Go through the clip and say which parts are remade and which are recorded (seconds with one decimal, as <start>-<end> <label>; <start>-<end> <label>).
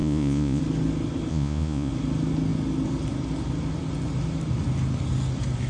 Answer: 0.0-0.6 remade; 0.6-1.3 recorded; 1.3-1.9 remade; 1.9-5.7 recorded